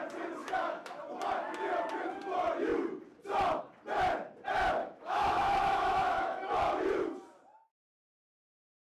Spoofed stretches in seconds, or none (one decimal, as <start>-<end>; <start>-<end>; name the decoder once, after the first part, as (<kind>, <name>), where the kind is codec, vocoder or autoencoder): 0.4-1.0 (autoencoder, DAC-VAE); 4.8-6.5